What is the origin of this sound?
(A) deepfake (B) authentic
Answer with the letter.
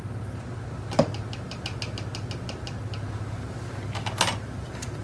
B